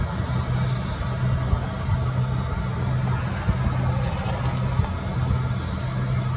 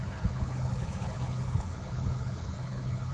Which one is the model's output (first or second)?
second